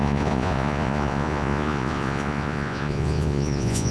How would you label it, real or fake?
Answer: fake